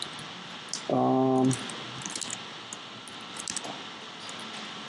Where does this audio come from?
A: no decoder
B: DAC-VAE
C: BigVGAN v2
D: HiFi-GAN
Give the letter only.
A